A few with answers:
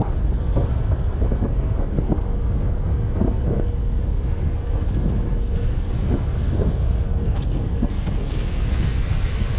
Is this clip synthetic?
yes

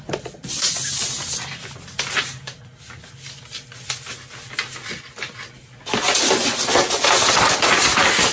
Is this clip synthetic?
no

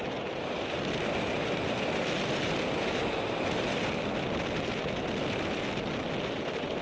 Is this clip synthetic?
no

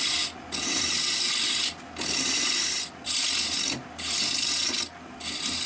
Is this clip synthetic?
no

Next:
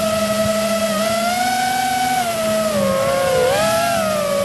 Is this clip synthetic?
no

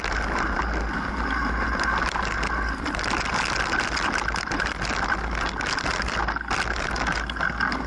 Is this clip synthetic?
no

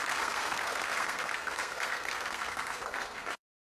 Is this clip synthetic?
yes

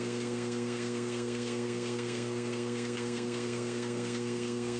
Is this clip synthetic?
yes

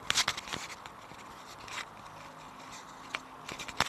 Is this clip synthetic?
no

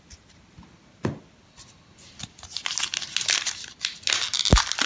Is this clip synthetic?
no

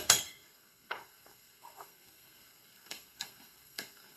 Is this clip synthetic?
yes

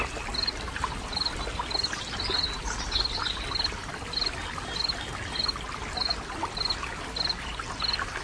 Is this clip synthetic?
no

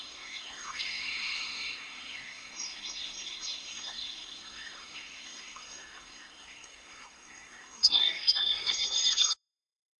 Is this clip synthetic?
yes